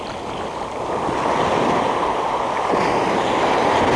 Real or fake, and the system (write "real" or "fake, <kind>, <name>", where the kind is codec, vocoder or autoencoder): real